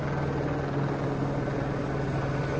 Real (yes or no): yes